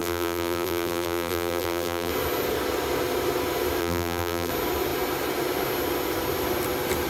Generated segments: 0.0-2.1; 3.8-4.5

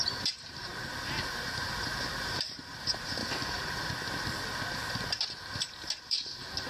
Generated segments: 0.0-3.2; 5.9-6.7

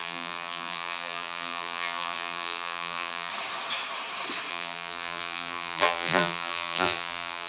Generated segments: 0.0-3.3; 4.5-7.5

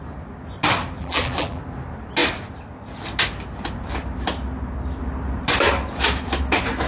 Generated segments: 1.0-1.6

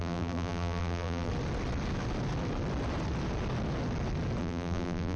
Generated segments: 0.0-1.3; 4.4-5.2